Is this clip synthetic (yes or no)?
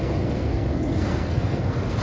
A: yes